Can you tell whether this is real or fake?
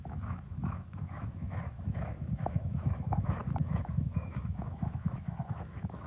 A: fake